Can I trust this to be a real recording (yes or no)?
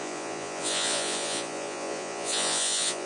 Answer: no